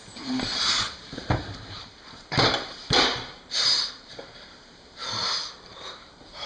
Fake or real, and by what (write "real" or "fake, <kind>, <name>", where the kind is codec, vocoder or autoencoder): fake, vocoder, BigVGAN v2